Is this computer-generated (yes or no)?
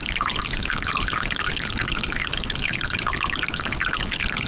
yes